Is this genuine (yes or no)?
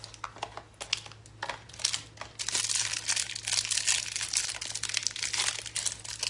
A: yes